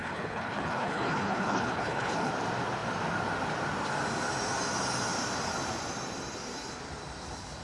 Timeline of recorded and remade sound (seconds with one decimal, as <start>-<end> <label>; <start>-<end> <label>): 0.0-2.3 remade; 2.3-7.6 recorded